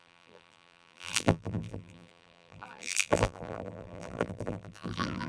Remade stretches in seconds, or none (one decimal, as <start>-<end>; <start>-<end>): 0.0-5.3